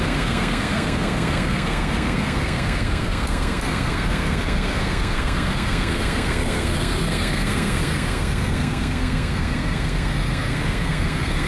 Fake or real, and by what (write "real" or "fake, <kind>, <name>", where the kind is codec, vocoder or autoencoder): fake, codec, SNAC